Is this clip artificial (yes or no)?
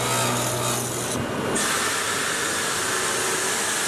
no